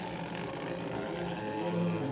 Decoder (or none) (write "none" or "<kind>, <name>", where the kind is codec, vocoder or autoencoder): none